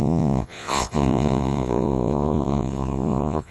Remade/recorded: remade